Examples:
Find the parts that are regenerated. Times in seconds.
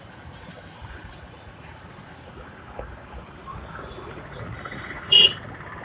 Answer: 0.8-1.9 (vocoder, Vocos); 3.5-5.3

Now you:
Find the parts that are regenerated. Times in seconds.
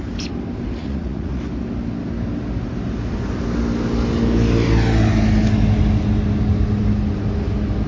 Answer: 0.8-1.4 (vocoder, Vocos)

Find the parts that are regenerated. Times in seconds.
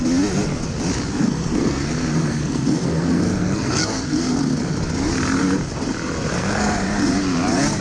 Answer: 1.2-4.3 (codec, SNAC); 6.3-6.9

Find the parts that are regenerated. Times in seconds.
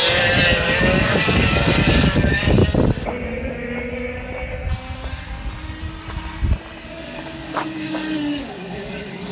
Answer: 0.8-2.6 (codec, DAC); 6.9-9.3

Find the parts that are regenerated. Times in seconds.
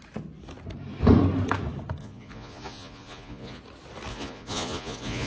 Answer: 2.0-3.6 (vocoder, Vocos); 4.1-5.3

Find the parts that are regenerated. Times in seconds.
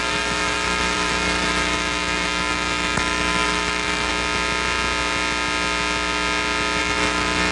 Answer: 0.0-4.1 (autoencoder, DAC-VAE); 6.8-7.5